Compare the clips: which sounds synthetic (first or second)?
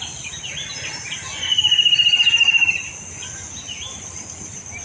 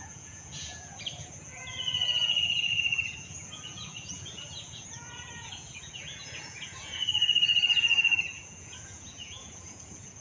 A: second